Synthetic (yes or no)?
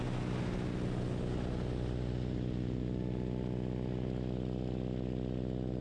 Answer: no